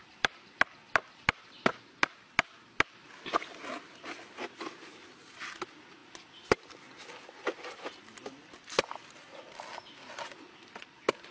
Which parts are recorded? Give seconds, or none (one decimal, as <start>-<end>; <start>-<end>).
0.0-11.3